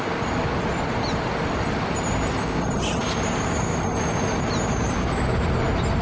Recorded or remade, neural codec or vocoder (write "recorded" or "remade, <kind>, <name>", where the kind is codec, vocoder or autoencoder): recorded